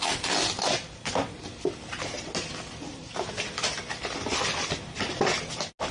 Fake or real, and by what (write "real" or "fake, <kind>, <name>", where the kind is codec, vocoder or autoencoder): real